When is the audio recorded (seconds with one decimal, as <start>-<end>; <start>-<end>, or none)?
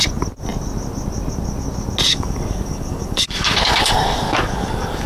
0.0-2.1